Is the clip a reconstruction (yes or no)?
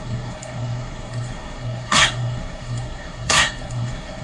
yes